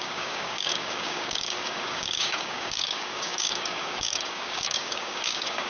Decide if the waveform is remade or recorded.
remade